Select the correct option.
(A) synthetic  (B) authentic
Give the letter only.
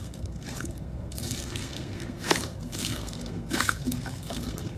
A